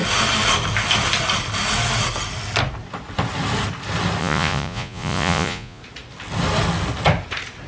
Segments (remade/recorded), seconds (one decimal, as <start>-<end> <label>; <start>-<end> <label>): 0.0-4.2 recorded; 4.2-5.8 remade; 5.8-7.7 recorded